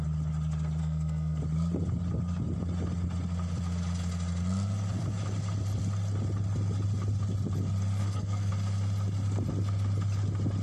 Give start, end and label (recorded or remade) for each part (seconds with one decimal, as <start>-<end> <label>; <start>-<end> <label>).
0.0-0.8 recorded; 0.8-1.4 remade; 1.4-8.0 recorded; 8.0-8.5 remade; 8.5-10.6 recorded